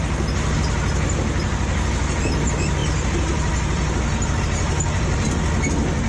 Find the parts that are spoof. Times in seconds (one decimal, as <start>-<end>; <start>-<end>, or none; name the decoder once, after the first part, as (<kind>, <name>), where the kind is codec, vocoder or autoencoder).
none